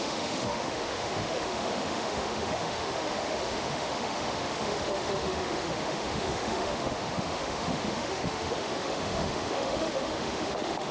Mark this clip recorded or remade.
remade